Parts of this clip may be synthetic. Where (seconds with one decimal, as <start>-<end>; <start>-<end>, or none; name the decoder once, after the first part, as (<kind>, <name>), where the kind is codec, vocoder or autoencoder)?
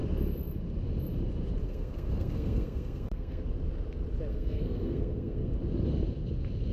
1.6-3.4 (codec, SNAC); 4.3-5.5